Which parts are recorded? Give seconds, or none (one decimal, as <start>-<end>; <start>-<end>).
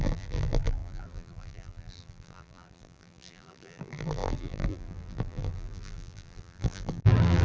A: none